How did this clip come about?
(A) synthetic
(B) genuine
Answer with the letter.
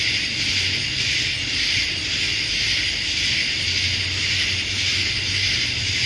B